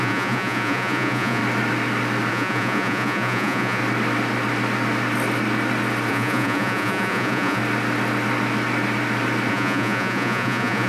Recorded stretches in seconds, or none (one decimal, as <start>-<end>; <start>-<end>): 1.4-2.3; 3.8-6.1; 7.6-9.5